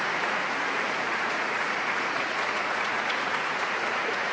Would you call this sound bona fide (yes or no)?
no